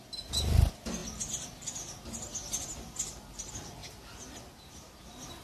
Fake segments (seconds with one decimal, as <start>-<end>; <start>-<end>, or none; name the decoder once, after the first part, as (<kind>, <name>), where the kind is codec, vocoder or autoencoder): none